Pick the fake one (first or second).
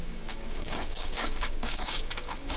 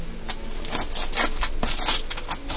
first